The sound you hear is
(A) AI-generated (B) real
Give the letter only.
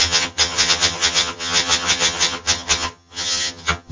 A